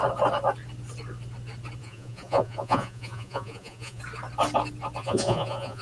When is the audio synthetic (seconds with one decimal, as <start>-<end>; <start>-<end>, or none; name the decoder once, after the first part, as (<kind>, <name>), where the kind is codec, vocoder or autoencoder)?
1.8-4.0 (vocoder, Vocos); 5.0-5.8